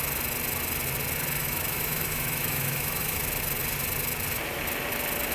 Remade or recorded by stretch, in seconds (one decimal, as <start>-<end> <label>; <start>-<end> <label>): 0.0-1.4 recorded; 1.4-3.2 remade; 3.2-5.3 recorded